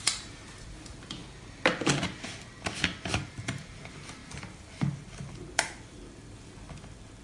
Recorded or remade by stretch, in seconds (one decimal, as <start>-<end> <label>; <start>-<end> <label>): 0.0-1.2 remade; 1.2-3.2 recorded; 3.2-4.2 remade; 4.2-5.3 recorded; 5.3-7.2 remade